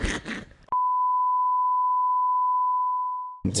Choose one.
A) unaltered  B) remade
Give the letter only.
A